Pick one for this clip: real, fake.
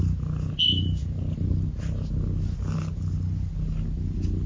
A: real